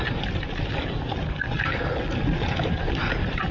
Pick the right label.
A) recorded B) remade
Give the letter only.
A